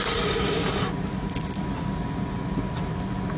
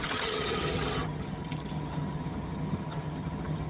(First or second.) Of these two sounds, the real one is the first